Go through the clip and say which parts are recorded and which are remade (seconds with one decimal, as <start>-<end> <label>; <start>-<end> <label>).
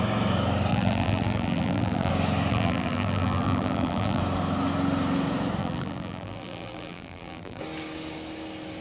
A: 0.0-0.7 recorded; 0.7-2.1 remade; 2.1-2.5 recorded; 2.5-4.2 remade; 4.2-5.6 recorded; 5.6-7.6 remade; 7.6-8.8 recorded